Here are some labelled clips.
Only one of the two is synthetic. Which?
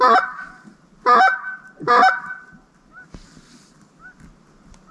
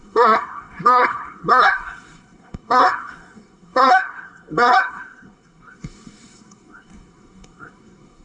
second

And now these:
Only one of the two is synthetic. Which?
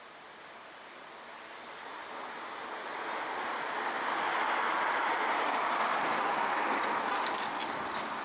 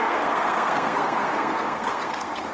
second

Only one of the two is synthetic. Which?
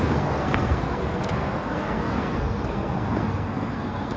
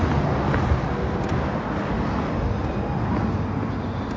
first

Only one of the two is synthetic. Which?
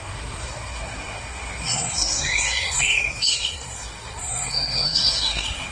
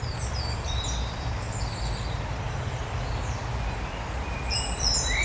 first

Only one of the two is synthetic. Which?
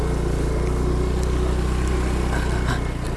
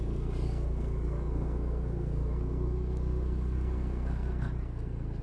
second